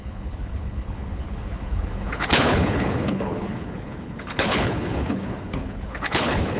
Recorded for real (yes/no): no